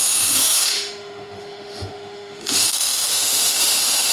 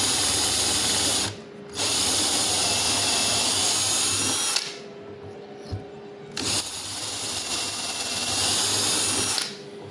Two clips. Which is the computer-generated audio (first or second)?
first